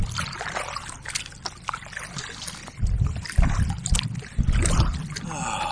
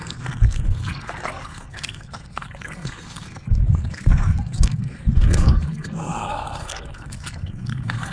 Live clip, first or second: first